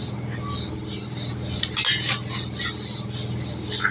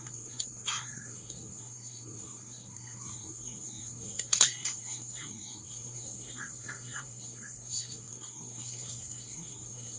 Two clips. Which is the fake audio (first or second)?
second